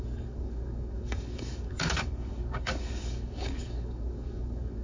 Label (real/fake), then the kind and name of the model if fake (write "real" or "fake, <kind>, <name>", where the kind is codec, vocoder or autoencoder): fake, codec, DAC